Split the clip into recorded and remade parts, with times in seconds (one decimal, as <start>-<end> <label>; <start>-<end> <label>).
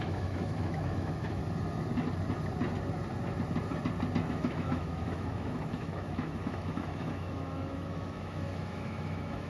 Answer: 0.0-1.4 remade; 1.4-4.3 recorded; 4.3-9.5 remade